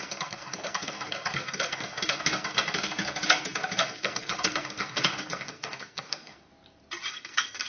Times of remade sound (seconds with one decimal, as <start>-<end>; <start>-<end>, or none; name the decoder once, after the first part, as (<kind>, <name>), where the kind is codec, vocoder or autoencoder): 0.0-6.5 (codec, SNAC); 7.1-7.7